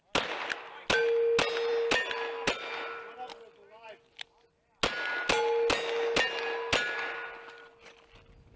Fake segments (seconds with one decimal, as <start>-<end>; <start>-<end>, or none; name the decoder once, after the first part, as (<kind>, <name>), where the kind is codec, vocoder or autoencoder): none

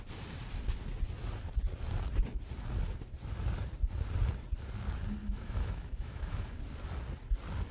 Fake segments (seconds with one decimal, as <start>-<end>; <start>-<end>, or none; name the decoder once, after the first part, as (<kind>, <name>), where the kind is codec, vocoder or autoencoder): 5.2-6.6 (autoencoder, DAC-VAE)